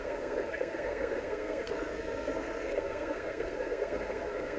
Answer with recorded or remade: remade